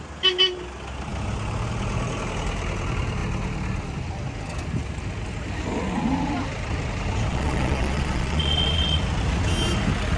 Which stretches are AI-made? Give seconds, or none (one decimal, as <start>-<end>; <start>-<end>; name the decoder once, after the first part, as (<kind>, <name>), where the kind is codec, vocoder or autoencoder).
7.3-9.0 (vocoder, Vocos)